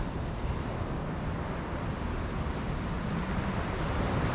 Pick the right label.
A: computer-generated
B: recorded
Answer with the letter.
B